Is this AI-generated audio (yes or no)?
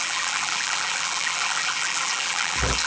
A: yes